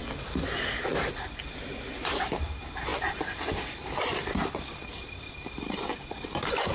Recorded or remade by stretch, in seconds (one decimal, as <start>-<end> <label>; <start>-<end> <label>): 0.0-6.7 recorded